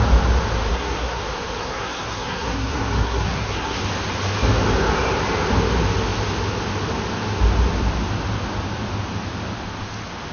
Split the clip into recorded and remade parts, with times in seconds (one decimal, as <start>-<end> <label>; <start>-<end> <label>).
0.0-0.7 recorded; 0.7-1.2 remade; 1.2-1.6 recorded; 1.6-3.8 remade; 3.8-10.3 recorded